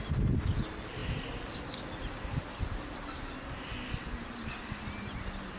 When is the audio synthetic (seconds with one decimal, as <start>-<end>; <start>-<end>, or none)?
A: none